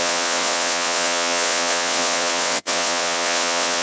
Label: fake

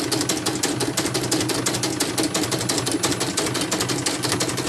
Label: real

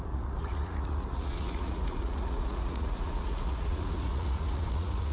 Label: fake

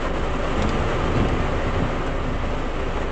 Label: real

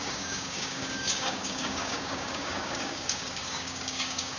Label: fake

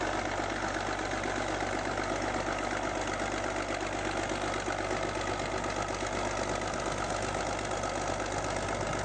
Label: real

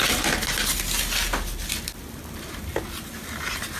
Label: real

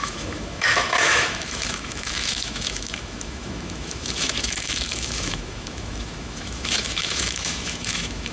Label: fake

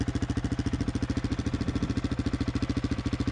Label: real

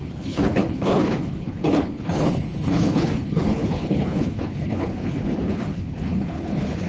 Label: fake